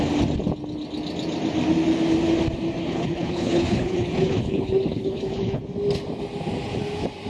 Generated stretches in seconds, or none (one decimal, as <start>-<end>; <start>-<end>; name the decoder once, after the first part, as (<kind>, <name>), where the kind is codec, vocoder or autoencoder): 2.8-5.6 (codec, HILCodec)